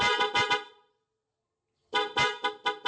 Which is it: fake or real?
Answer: real